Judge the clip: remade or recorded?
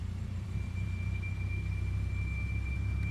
recorded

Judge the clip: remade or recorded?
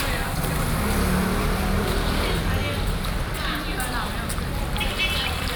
recorded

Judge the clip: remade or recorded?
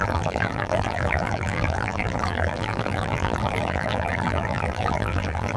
remade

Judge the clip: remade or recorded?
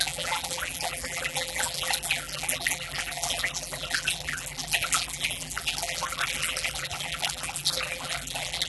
remade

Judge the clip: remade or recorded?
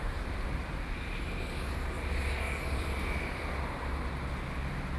recorded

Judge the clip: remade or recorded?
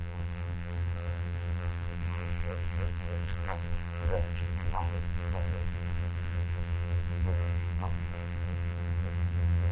remade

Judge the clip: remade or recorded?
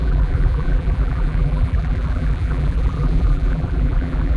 remade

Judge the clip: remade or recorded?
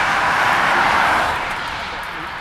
remade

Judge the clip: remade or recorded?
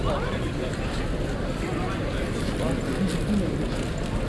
recorded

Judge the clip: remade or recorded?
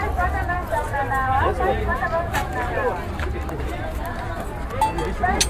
recorded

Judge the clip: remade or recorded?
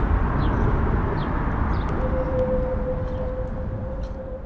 recorded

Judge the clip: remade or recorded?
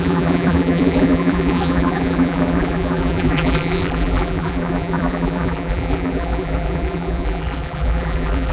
remade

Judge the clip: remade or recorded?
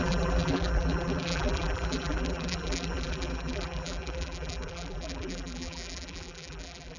remade